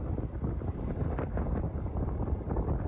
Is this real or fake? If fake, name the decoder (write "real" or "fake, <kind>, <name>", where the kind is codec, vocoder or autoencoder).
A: real